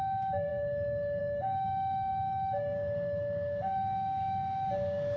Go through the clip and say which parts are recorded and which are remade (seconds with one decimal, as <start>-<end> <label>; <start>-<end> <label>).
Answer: 0.0-5.2 remade